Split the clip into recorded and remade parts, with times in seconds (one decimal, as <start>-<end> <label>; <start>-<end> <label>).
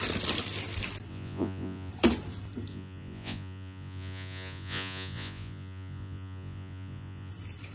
0.0-1.1 recorded; 1.1-1.9 remade; 1.9-2.7 recorded; 2.7-7.3 remade; 7.3-7.7 recorded